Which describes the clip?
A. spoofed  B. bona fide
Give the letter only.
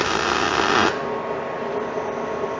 B